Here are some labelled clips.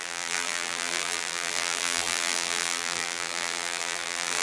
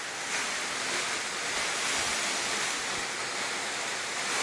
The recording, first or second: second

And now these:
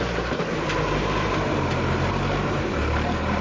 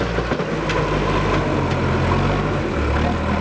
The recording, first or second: second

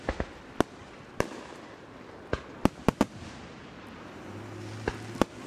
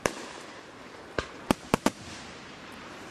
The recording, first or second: first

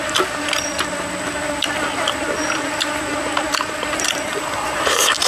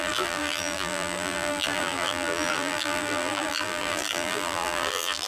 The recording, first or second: first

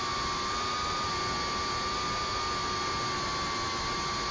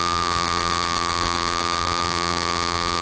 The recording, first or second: first